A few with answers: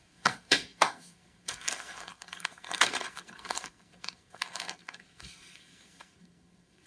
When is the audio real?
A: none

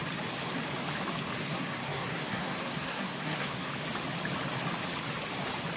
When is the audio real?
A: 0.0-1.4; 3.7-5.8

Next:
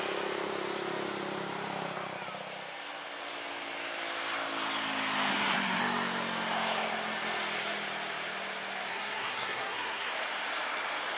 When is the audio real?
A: 0.0-5.3; 5.8-8.9; 10.1-11.2

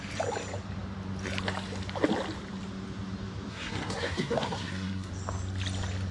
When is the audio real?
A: 0.0-3.5; 5.1-6.1

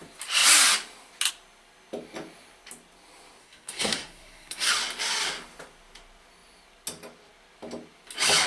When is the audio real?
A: 0.0-3.4; 4.7-8.5

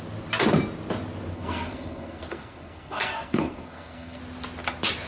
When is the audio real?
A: 0.0-1.3; 4.2-5.1